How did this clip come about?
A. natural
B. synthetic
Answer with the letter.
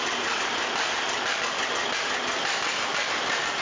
A